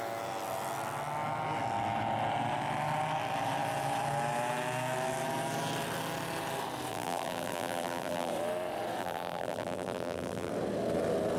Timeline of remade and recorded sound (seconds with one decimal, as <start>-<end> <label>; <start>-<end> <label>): 0.0-6.9 recorded; 6.9-8.3 remade; 8.3-9.0 recorded; 9.0-10.5 remade; 10.5-11.4 recorded